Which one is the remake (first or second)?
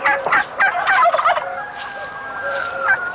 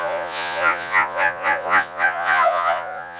second